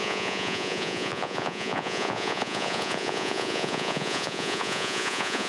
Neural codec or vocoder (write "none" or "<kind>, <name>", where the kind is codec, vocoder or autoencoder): vocoder, Vocos